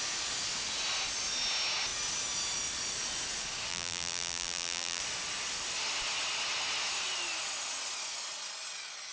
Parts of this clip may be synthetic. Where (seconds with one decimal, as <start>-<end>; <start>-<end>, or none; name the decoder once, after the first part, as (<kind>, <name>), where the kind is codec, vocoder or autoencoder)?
3.7-5.0 (vocoder, BigVGAN v2)